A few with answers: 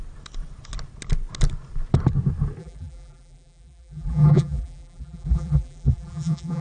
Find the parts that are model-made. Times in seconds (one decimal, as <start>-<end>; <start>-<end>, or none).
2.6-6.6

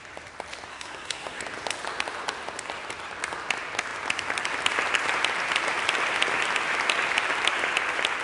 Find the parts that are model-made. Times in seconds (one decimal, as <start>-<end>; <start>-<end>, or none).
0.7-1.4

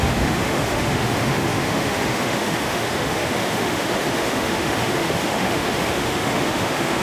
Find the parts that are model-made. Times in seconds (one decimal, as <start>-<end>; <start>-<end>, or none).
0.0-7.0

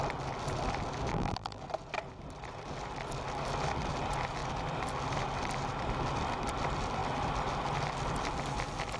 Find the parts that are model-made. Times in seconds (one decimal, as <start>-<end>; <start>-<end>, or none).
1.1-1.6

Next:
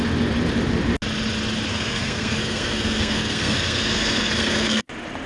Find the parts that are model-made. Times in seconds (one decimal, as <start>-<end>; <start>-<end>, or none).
1.7-4.8